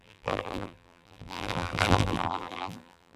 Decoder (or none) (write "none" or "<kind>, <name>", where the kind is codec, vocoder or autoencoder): vocoder, BigVGAN v2